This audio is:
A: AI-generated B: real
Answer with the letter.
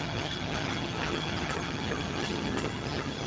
A